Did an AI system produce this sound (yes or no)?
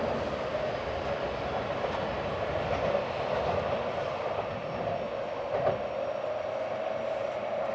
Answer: no